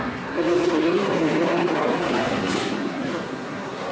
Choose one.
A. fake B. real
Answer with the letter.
A